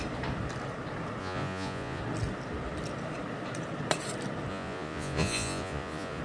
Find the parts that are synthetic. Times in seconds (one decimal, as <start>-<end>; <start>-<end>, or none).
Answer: 1.2-2.0; 4.5-6.2